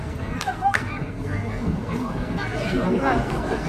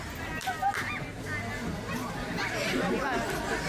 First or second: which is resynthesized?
first